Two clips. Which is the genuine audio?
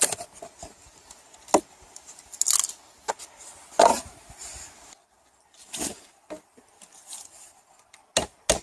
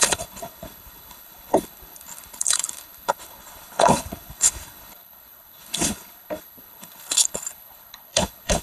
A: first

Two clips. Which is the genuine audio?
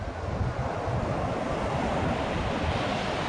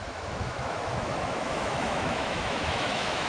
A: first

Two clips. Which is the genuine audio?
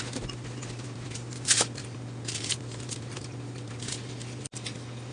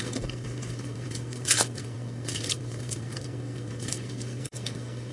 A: first